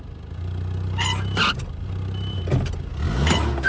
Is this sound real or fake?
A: real